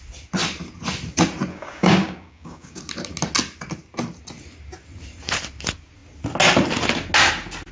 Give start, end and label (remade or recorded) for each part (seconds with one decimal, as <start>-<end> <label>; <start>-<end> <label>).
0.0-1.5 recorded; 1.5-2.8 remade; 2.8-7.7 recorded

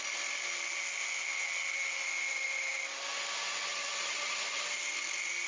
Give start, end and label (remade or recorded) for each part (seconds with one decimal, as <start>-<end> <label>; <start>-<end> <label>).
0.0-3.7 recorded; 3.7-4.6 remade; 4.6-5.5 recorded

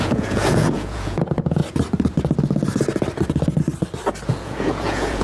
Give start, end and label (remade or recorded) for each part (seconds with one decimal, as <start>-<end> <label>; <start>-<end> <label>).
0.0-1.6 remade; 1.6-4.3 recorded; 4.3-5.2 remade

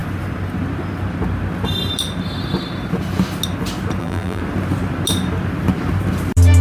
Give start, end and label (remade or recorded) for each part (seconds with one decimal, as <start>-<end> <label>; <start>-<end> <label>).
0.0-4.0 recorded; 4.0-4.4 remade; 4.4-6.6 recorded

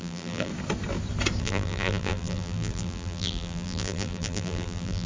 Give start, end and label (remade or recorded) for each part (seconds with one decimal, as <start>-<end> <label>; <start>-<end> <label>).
0.0-0.5 remade; 0.5-1.4 recorded; 1.4-5.1 remade

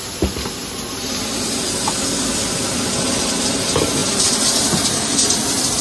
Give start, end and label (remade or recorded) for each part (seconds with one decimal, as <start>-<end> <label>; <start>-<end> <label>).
0.0-5.8 recorded